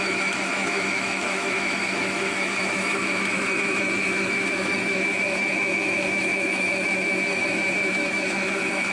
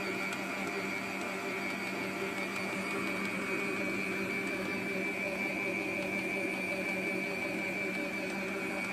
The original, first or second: second